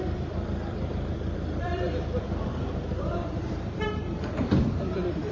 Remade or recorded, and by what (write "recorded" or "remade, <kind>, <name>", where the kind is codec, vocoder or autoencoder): remade, vocoder, BigVGAN v2